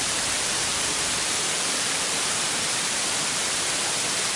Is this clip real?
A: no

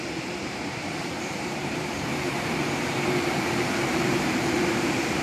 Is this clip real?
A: no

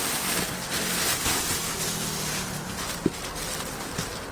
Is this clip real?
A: yes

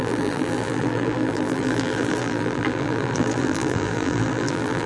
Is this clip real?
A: no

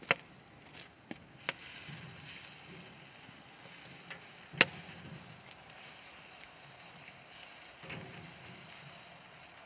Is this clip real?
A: yes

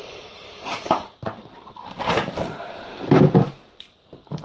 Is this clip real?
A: no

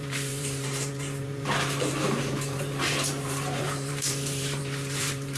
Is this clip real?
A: no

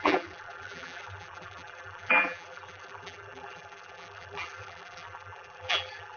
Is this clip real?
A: no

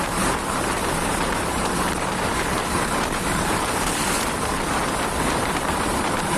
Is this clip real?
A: no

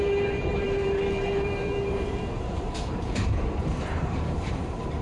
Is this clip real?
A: no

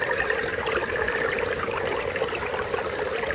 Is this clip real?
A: no